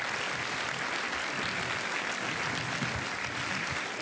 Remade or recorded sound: recorded